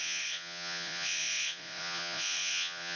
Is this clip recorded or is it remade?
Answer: remade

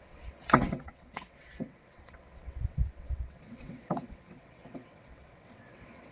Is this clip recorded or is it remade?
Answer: remade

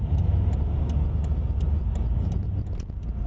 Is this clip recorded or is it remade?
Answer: recorded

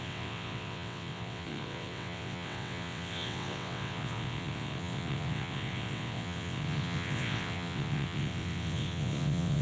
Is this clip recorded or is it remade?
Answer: remade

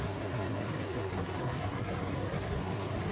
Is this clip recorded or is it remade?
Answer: remade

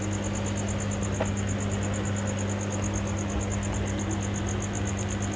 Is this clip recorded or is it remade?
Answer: recorded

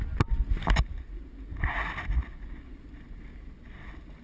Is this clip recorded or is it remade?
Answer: recorded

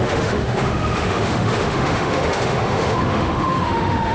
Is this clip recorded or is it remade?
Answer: remade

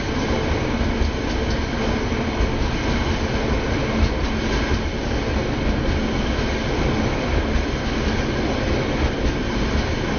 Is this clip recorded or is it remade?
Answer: recorded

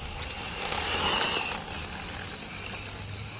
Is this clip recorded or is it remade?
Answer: recorded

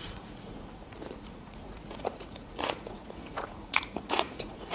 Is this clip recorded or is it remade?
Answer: remade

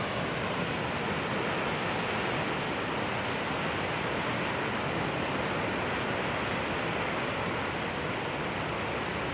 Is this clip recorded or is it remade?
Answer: recorded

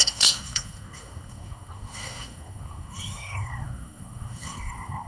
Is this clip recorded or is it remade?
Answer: remade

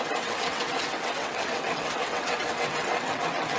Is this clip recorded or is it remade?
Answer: remade